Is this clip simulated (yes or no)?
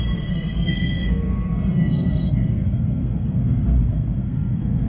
yes